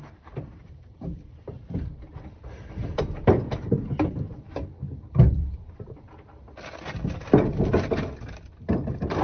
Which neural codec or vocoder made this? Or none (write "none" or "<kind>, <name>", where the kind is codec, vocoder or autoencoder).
vocoder, BigVGAN v2